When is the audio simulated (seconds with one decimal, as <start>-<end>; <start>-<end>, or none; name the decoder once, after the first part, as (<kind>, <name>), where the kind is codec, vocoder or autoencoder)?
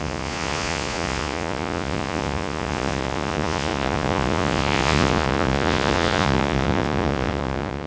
0.0-7.9 (vocoder, Vocos)